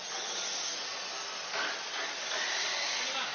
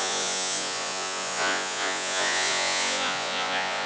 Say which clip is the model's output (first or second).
second